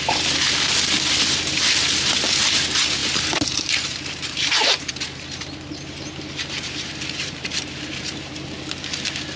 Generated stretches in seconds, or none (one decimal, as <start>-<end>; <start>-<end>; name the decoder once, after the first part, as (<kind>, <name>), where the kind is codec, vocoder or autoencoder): 3.0-8.3 (vocoder, BigVGAN v2)